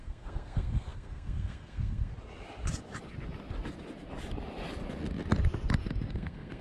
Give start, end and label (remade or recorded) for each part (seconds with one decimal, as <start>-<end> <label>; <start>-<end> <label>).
0.0-2.1 remade; 2.1-6.1 recorded; 6.1-6.6 remade